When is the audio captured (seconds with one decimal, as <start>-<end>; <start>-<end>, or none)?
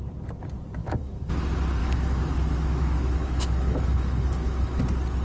0.0-0.8; 1.3-1.8; 4.8-5.2